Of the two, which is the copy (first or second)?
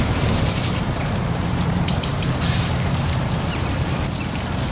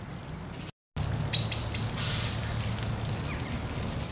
first